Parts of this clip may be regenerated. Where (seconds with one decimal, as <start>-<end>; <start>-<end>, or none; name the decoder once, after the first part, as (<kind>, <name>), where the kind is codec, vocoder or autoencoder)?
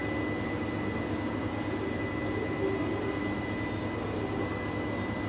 none